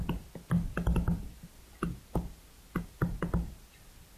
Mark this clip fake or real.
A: real